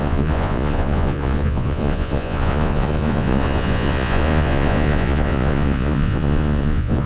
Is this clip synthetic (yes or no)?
yes